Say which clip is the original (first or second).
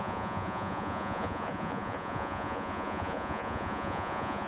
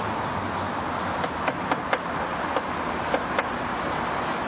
second